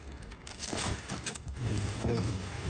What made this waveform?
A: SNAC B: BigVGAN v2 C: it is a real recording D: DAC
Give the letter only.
D